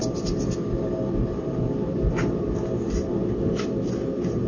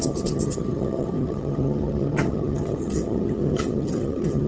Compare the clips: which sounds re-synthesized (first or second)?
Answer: second